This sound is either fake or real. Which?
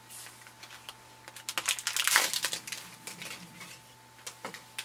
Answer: real